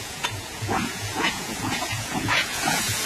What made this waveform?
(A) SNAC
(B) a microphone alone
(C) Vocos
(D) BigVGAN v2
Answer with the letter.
C